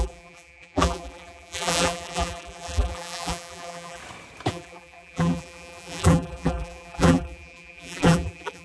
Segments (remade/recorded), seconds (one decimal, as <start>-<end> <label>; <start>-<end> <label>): 0.0-4.0 remade; 4.0-4.5 recorded; 4.5-8.6 remade